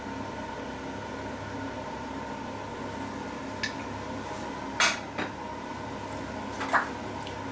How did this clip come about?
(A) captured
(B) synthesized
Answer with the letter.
A